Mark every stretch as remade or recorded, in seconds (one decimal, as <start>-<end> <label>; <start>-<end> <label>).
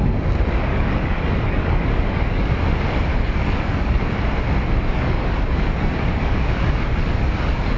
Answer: 0.0-0.7 recorded; 0.7-2.5 remade; 2.5-3.1 recorded; 3.1-4.0 remade; 4.0-4.9 recorded; 4.9-7.8 remade